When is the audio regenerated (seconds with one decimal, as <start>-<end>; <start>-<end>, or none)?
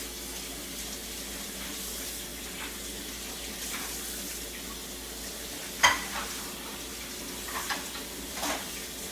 none